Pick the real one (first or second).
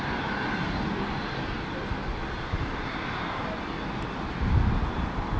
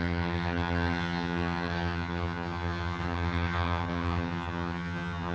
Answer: first